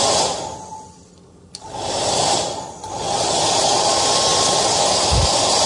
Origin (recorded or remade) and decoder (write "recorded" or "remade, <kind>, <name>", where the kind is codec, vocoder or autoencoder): recorded